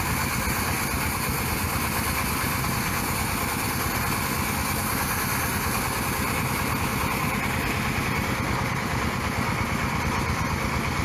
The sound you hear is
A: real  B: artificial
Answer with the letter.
A